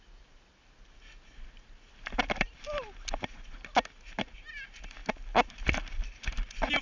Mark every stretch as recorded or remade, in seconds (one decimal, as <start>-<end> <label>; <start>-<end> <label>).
0.0-6.8 recorded